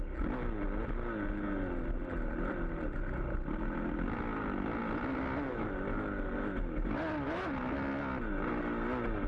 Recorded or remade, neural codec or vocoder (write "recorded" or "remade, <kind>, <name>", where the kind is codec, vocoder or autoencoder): recorded